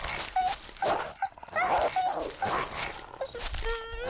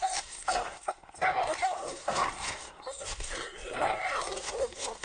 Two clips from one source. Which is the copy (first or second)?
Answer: second